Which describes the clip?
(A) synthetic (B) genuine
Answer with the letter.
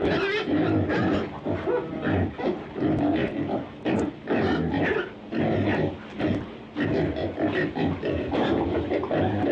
B